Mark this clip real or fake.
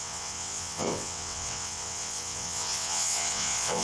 fake